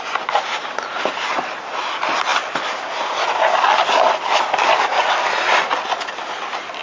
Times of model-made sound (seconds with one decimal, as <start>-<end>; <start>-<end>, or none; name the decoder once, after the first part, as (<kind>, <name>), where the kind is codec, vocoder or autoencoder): 2.3-6.8 (vocoder, BigVGAN v2)

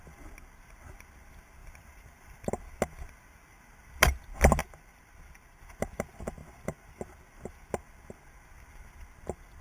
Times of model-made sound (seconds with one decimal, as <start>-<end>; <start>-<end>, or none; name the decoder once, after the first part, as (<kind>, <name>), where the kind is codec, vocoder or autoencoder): 1.6-2.5 (vocoder, BigVGAN v2)

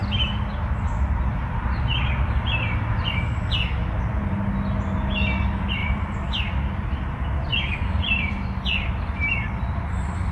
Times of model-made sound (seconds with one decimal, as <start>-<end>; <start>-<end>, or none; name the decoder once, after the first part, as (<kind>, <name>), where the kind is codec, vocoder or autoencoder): 5.8-6.4 (vocoder, BigVGAN v2); 7.5-8.3

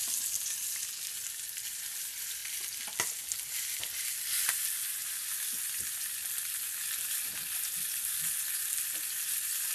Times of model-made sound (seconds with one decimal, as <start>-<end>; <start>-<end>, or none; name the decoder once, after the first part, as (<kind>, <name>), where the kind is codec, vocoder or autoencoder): none

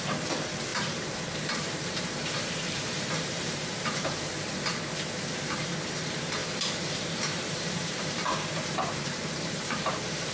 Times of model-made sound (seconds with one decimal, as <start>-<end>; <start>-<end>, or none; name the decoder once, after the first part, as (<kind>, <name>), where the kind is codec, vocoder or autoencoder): 0.7-4.3 (vocoder, BigVGAN v2); 6.4-10.3